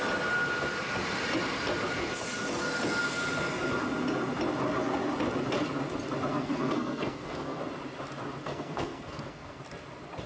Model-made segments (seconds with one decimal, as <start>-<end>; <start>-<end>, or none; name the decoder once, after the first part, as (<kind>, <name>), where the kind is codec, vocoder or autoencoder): 6.3-7.6 (codec, SNAC); 8.4-9.6